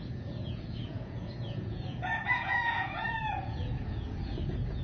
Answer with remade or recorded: remade